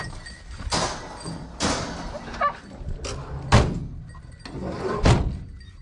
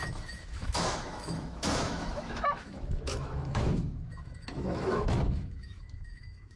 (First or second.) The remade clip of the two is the second